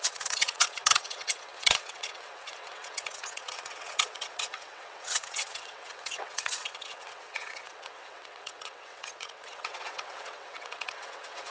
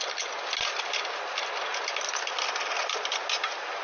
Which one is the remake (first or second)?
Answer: first